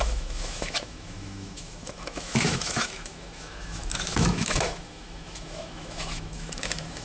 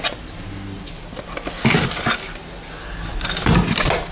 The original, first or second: second